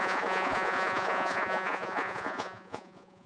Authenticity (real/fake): fake